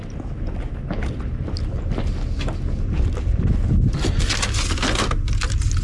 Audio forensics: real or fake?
real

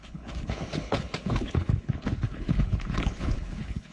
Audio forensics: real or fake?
fake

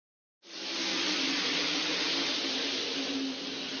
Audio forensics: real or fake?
real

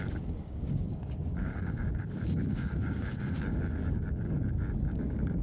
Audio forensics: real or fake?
fake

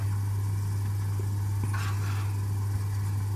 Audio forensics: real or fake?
real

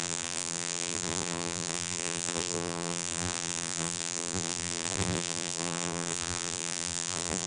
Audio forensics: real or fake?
fake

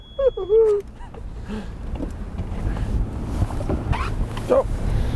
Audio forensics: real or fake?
real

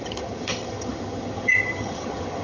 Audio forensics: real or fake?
fake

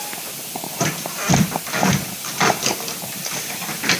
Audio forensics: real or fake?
real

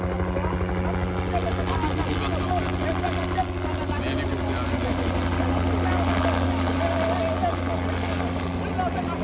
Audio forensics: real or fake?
real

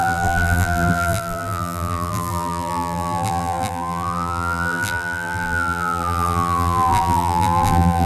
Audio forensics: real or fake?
fake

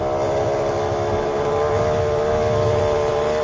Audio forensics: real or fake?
real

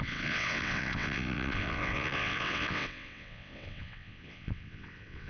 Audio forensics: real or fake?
fake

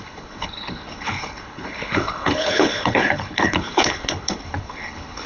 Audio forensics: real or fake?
fake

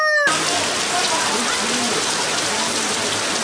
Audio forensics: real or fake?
real